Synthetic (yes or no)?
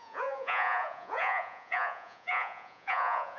yes